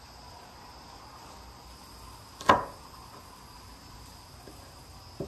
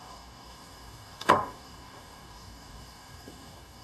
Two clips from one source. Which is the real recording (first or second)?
first